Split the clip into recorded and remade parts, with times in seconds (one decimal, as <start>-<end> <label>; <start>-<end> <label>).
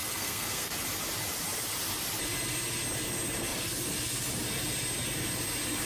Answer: 0.0-0.7 remade; 0.7-5.9 recorded